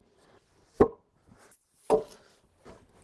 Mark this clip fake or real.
real